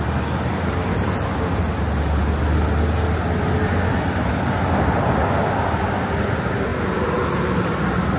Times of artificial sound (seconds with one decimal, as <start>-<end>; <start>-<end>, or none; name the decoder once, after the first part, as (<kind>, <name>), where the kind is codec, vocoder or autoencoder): none